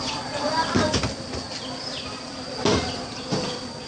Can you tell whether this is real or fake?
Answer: real